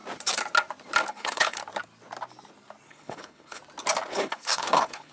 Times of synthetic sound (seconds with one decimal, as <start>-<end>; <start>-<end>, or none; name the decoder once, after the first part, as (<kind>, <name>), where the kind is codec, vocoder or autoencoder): 1.1-1.6 (codec, HILCodec); 2.9-3.6; 4.1-5.1